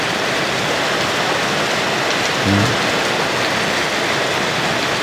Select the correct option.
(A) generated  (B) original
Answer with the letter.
B